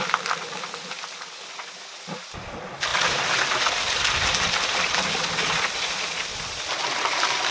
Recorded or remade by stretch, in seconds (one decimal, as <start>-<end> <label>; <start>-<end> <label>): 0.0-7.5 recorded